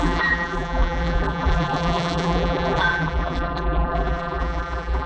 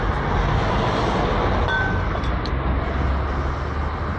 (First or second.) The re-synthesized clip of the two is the first